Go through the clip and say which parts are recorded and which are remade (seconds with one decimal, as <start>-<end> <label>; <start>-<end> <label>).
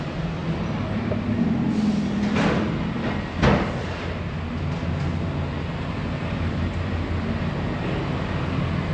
0.0-8.9 recorded